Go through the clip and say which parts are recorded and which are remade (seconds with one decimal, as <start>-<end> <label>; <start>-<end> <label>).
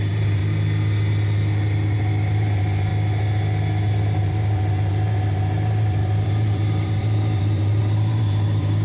0.0-0.4 remade; 0.4-2.3 recorded; 2.3-2.9 remade; 2.9-3.9 recorded; 3.9-8.8 remade